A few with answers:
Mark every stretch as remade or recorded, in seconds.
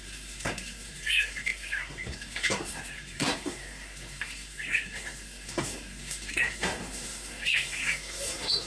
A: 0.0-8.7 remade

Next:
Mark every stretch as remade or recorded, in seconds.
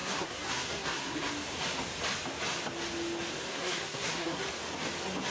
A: 0.0-1.3 remade; 1.3-3.5 recorded; 3.5-4.4 remade; 4.4-5.3 recorded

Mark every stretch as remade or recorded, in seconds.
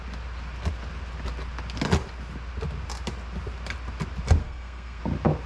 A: 0.0-4.4 recorded; 4.4-5.0 remade; 5.0-5.5 recorded